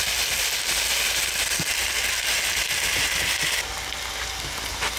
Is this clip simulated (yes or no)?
no